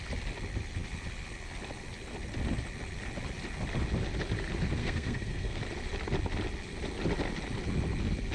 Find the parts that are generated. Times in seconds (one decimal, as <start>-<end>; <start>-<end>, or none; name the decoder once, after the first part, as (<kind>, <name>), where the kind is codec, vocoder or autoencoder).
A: 4.8-5.6 (codec, SNAC)